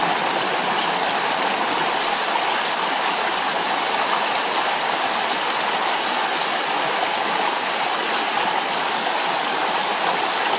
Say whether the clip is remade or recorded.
recorded